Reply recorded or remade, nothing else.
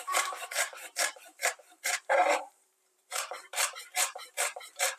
remade